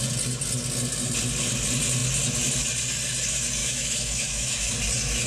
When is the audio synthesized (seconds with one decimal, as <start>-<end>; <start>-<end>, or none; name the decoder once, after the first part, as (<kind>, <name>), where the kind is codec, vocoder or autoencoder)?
3.6-4.7 (autoencoder, DAC-VAE)